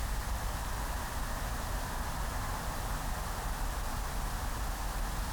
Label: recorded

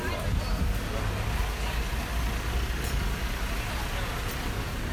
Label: recorded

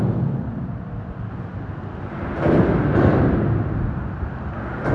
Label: recorded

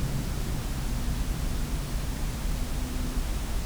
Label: recorded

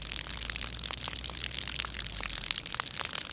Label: recorded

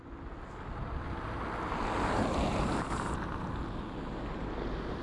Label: recorded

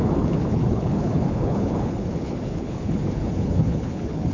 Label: remade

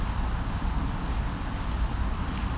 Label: recorded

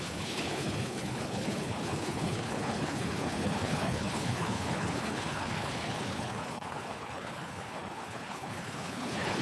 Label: remade